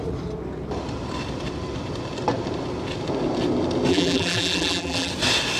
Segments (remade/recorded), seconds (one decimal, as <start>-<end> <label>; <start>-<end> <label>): 0.0-3.9 recorded; 3.9-5.1 remade; 5.1-5.6 recorded